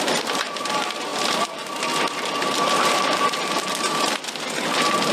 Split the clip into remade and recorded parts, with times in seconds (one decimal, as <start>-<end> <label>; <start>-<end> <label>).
0.0-5.1 recorded